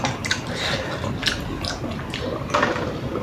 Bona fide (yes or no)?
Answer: yes